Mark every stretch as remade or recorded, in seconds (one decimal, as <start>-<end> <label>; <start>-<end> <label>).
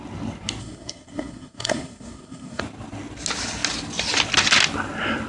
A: 0.0-0.6 recorded; 0.6-2.6 remade; 2.6-5.3 recorded